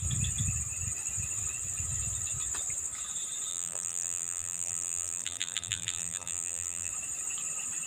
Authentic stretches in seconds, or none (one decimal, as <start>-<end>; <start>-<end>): 0.0-3.5; 6.9-7.9